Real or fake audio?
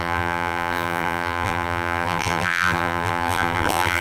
fake